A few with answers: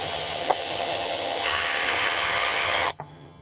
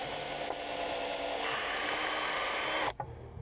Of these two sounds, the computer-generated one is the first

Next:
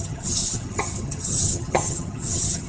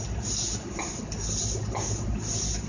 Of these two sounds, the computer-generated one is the first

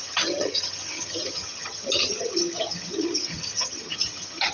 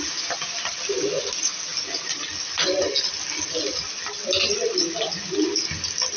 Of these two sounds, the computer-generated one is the first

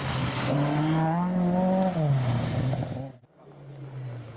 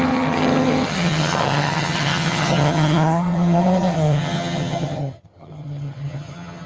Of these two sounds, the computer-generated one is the second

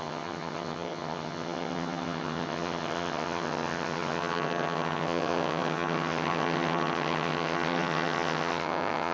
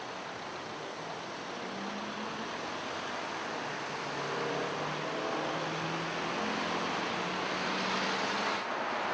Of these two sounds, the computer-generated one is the first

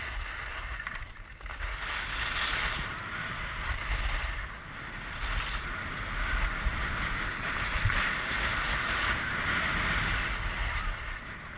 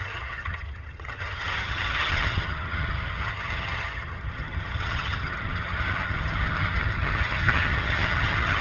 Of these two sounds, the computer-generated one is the second